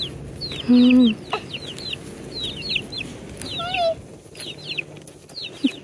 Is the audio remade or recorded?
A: recorded